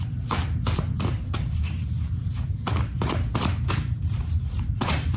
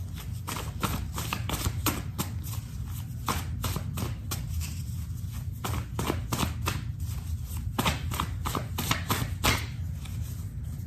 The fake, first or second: first